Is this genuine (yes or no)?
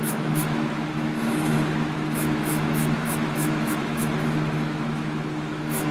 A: no